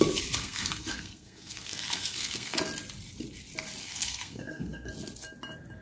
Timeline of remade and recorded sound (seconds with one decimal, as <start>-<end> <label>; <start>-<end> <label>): 0.0-0.4 recorded; 0.4-2.6 remade; 2.6-3.8 recorded; 3.8-4.9 remade; 4.9-5.8 recorded